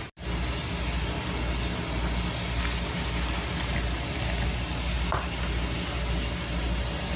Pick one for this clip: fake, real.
real